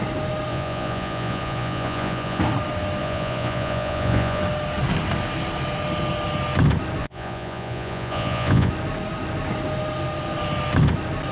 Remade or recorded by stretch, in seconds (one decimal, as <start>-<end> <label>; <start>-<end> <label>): 0.0-0.5 recorded; 0.5-2.4 remade; 2.4-3.0 recorded; 3.0-4.4 remade; 4.4-7.0 recorded; 7.0-8.7 remade; 8.7-11.3 recorded